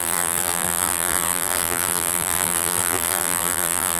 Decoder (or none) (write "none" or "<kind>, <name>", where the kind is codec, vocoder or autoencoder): vocoder, BigVGAN v2